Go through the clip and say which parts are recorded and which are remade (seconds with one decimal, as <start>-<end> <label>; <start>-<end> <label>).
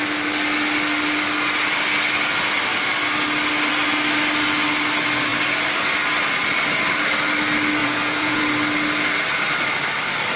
0.0-7.8 recorded; 7.8-8.4 remade; 8.4-10.4 recorded